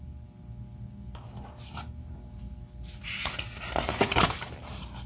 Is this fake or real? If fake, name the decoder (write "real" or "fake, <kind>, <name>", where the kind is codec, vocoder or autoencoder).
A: real